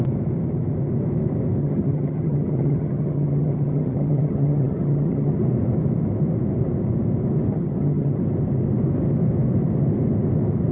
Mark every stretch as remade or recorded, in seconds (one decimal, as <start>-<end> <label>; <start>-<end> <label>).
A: 0.0-1.6 recorded; 1.6-5.4 remade; 5.4-7.5 recorded; 7.5-8.2 remade; 8.2-10.7 recorded